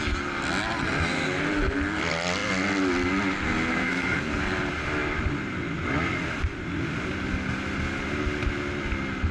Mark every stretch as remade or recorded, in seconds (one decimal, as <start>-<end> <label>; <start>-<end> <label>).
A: 0.0-3.7 recorded; 3.7-4.4 remade; 4.4-9.3 recorded

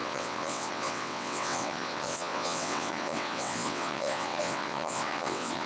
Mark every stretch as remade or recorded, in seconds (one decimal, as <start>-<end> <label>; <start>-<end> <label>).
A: 0.0-5.7 remade

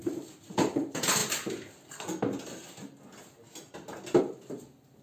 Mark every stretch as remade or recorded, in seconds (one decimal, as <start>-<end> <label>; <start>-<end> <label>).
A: 0.0-1.2 remade; 1.2-4.2 recorded; 4.2-5.0 remade